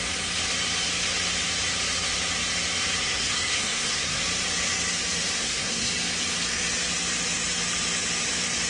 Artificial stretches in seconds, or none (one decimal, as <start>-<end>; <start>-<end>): 3.0-4.2; 5.4-5.9

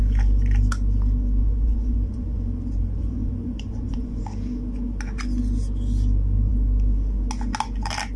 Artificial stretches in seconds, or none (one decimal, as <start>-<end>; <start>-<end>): 1.4-4.2

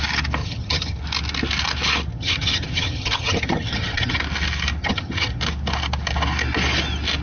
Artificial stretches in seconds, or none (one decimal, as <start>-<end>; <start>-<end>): 0.4-1.0; 2.1-4.2; 4.8-5.4